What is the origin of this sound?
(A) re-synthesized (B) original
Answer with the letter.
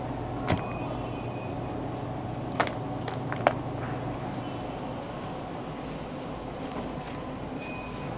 B